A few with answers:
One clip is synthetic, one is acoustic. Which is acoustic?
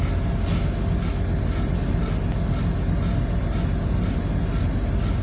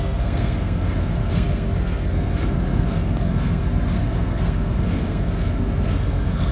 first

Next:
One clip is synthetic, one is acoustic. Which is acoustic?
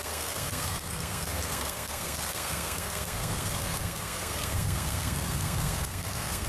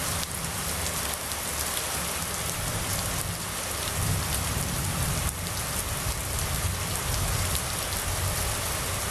second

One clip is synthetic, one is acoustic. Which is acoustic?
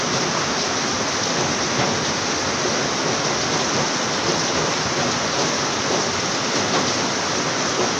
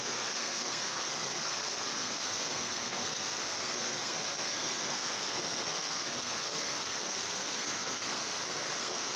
first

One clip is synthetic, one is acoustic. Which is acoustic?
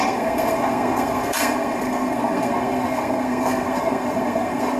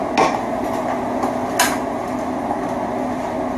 second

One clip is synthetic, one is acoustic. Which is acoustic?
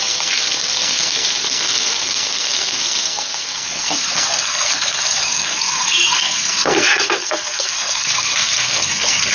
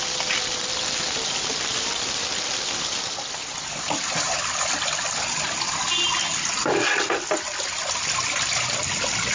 second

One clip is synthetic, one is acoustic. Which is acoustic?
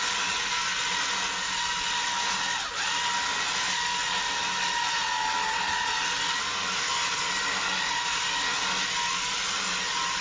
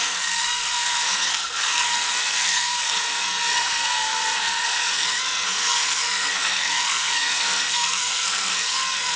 first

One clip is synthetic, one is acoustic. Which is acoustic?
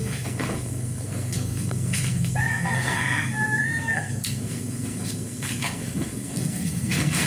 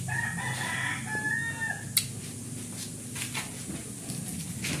second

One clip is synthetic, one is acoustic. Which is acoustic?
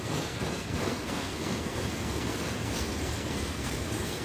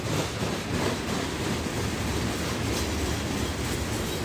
second